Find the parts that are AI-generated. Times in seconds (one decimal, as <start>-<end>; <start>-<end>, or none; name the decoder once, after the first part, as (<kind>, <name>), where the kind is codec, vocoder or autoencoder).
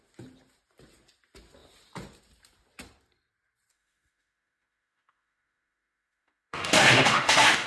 3.7-7.7 (autoencoder, DAC-VAE)